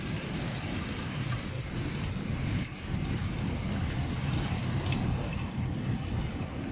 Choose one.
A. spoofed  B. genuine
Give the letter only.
B